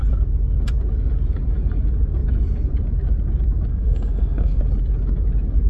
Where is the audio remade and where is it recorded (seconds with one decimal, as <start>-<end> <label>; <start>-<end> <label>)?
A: 0.0-3.7 recorded; 3.7-4.6 remade; 4.6-5.7 recorded